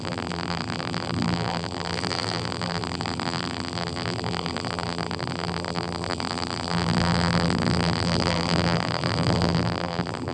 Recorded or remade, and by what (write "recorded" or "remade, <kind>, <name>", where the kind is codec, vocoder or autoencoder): remade, vocoder, BigVGAN v2